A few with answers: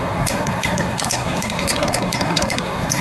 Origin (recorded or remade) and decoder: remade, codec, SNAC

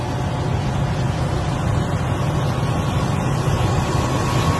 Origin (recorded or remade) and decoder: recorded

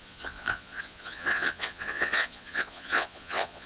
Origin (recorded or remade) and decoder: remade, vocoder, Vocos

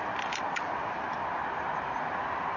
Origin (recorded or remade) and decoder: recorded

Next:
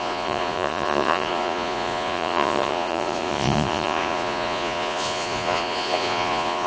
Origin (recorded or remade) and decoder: remade, vocoder, Vocos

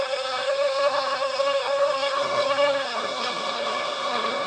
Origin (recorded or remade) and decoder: remade, codec, SNAC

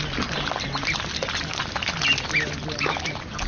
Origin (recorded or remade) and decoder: recorded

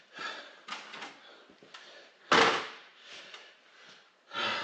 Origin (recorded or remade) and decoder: recorded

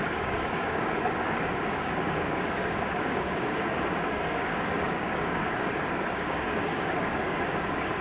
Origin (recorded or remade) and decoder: remade, codec, DAC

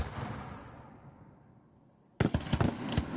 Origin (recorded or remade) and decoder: recorded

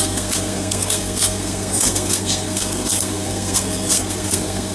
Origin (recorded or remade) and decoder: remade, codec, SNAC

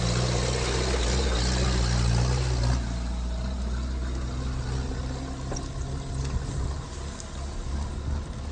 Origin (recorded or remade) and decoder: recorded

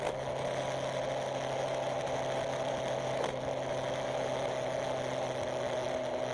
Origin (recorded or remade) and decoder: recorded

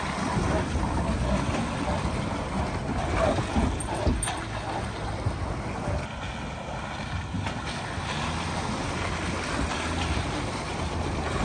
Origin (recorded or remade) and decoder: recorded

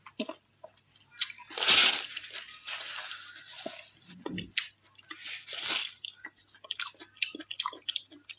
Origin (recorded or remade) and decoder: recorded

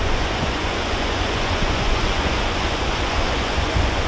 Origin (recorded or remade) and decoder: remade, vocoder, Vocos